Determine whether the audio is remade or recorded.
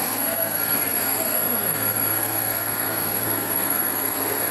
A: remade